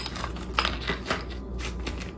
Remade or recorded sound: recorded